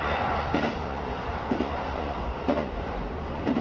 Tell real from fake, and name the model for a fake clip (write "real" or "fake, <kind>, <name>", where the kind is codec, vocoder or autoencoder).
fake, vocoder, Vocos